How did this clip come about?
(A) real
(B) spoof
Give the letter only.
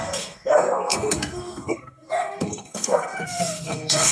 B